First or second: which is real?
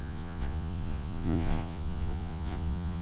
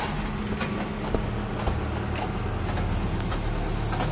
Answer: second